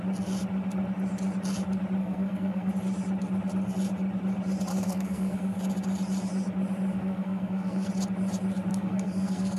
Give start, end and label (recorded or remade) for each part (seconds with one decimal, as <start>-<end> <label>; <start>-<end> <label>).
0.0-2.0 recorded; 2.0-2.7 remade; 2.7-4.7 recorded; 4.7-5.6 remade; 5.6-6.9 recorded; 6.9-7.9 remade; 7.9-8.7 recorded; 8.7-9.6 remade